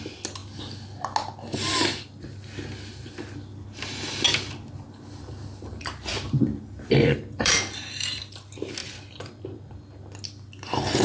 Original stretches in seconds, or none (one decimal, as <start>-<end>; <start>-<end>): 0.0-5.7; 8.3-8.8; 9.7-11.0